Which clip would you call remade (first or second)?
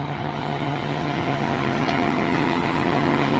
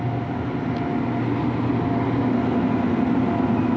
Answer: first